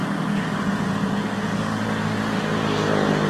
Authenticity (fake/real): real